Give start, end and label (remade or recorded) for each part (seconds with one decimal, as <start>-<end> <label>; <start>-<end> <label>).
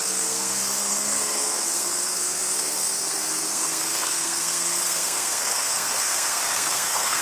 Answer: 0.0-7.2 remade